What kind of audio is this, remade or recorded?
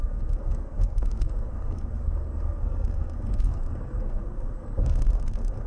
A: remade